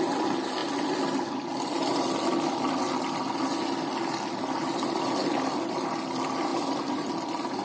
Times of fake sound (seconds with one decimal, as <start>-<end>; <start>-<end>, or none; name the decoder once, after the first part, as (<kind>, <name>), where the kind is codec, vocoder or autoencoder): none